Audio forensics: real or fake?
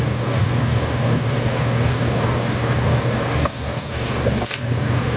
fake